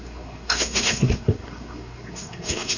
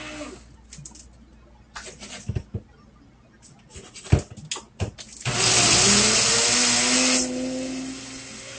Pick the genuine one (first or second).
second